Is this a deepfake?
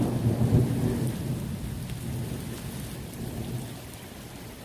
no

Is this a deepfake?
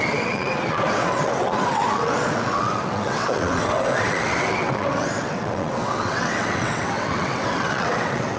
yes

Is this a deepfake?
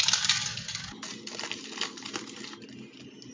no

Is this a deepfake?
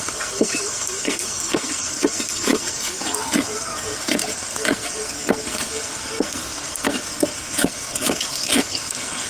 yes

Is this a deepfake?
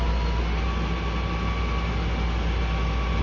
no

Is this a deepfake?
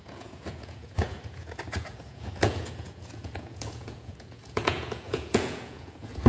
yes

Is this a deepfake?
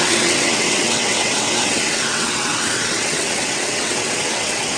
yes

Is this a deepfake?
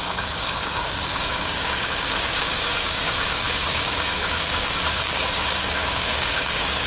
yes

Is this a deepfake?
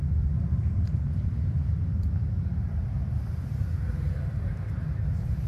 yes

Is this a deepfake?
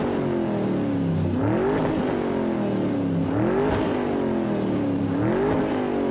no